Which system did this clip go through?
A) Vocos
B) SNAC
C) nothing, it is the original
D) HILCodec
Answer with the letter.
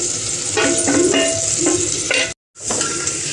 C